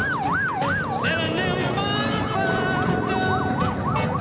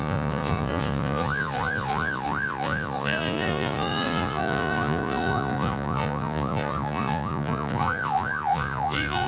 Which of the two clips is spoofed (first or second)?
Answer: second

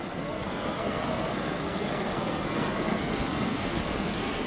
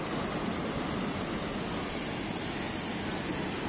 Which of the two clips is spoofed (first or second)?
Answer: first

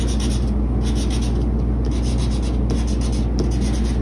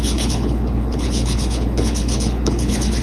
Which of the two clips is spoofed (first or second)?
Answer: second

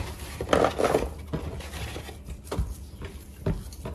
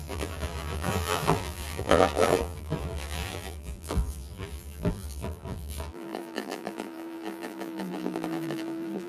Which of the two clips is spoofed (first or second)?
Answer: second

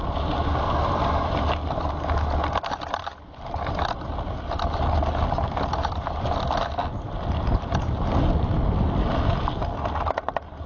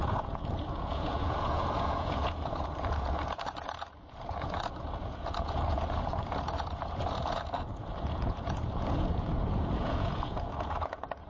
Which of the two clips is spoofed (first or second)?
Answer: second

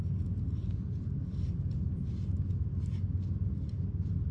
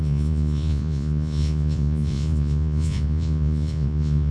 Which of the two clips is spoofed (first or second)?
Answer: second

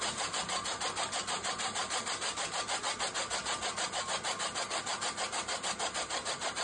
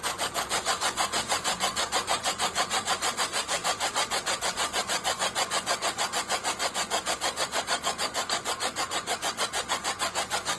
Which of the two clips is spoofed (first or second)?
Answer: second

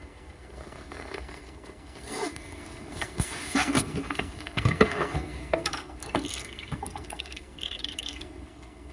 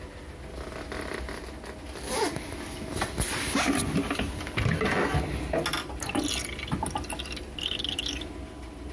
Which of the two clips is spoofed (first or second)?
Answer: first